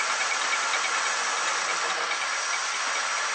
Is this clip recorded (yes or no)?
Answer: yes